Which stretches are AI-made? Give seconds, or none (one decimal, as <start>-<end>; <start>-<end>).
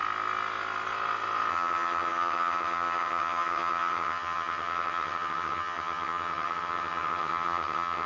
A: 1.5-8.1